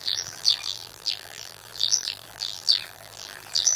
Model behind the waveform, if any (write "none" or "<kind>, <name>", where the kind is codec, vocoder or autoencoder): vocoder, BigVGAN v2